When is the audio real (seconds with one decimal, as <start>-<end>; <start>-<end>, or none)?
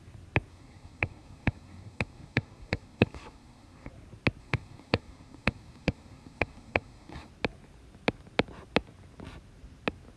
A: 0.0-0.5; 3.9-4.4; 7.3-10.2